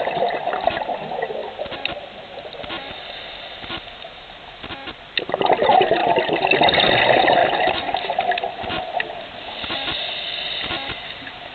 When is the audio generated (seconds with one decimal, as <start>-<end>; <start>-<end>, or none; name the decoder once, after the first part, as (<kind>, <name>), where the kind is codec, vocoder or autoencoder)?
none